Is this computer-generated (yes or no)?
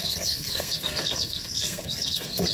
yes